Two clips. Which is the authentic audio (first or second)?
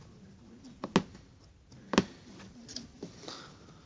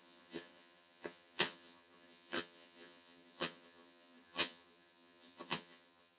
first